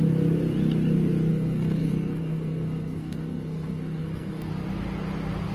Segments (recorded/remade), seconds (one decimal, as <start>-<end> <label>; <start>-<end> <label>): 0.0-1.3 recorded; 1.3-4.5 remade; 4.5-5.5 recorded